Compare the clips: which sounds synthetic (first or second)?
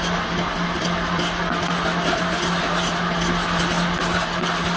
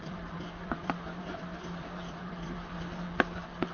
second